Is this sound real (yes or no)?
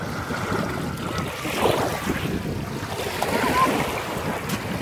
yes